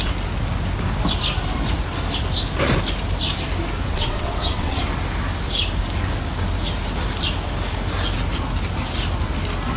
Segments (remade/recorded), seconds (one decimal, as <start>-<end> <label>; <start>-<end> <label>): 0.0-3.9 recorded; 3.9-4.8 remade; 4.8-9.8 recorded